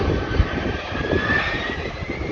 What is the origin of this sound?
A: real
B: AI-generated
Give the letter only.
B